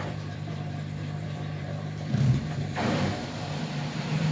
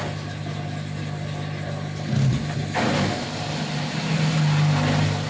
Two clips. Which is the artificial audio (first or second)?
first